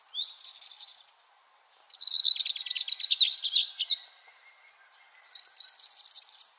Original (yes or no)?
yes